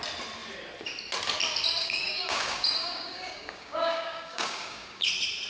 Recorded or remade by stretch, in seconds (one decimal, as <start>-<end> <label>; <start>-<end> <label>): 0.0-1.8 recorded; 1.8-5.1 remade; 5.1-5.5 recorded